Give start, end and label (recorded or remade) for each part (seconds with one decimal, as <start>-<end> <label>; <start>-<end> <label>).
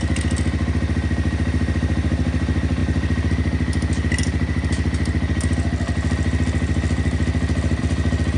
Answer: 0.0-8.4 recorded